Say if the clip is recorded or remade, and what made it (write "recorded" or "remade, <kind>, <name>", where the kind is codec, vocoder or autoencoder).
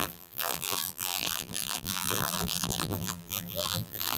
remade, vocoder, BigVGAN v2